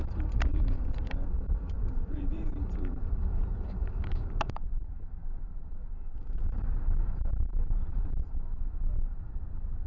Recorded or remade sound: remade